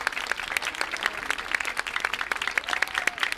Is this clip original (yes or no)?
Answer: yes